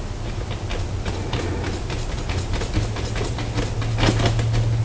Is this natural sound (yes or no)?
yes